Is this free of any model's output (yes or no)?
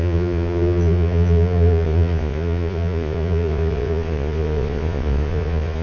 no